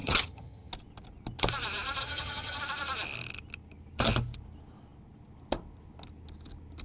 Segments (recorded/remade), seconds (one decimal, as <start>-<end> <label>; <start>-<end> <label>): 0.0-0.7 remade; 0.7-2.0 recorded; 2.0-2.6 remade; 2.6-6.8 recorded